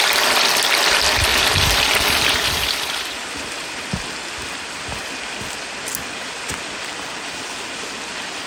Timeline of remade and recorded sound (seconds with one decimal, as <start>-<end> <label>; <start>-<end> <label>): 0.0-1.3 recorded; 1.3-3.0 remade; 3.0-8.5 recorded